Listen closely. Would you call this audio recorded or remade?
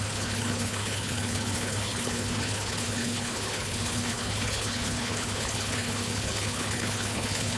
remade